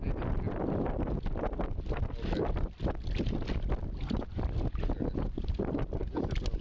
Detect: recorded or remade recorded